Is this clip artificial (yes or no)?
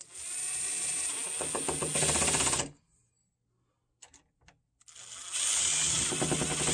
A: no